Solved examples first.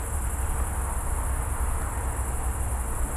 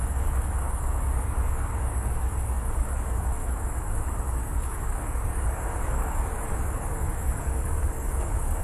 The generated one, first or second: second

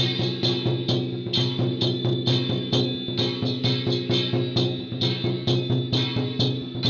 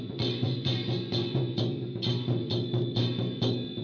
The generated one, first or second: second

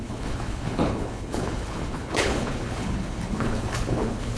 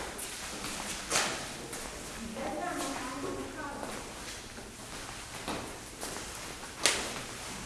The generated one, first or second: first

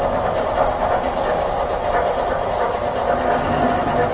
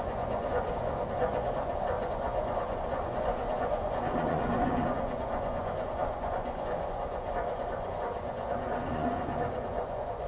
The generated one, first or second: second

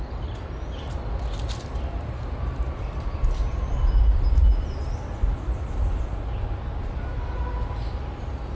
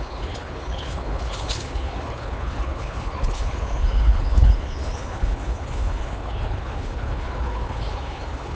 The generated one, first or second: second